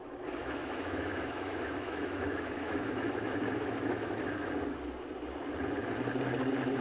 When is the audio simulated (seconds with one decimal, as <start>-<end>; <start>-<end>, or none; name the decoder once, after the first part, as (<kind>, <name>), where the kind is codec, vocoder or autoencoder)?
0.4-4.5 (autoencoder, DAC-VAE)